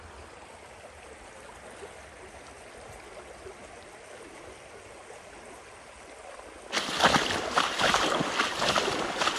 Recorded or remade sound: recorded